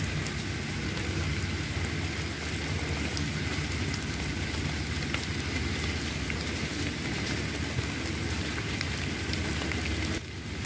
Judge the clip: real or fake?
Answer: real